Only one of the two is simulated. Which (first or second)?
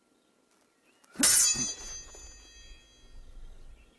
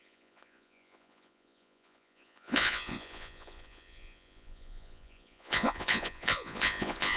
second